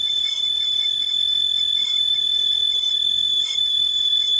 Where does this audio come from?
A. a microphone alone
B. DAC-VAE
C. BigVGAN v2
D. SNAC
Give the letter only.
C